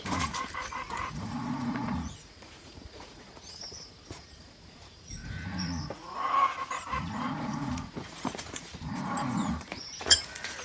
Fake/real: fake